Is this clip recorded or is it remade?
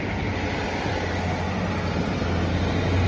recorded